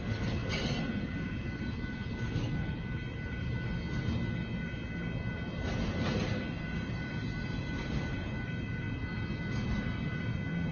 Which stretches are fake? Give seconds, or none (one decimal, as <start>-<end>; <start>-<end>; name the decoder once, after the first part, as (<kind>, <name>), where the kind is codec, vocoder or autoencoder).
none